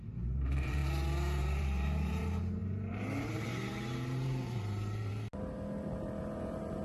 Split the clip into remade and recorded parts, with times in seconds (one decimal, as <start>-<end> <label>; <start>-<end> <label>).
0.0-0.8 remade; 0.8-1.4 recorded; 1.4-5.1 remade; 5.1-6.2 recorded; 6.2-6.8 remade